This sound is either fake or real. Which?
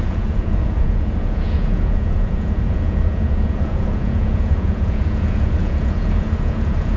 fake